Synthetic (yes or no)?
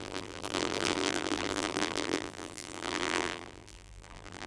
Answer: yes